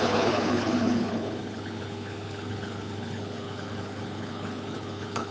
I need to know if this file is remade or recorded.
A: remade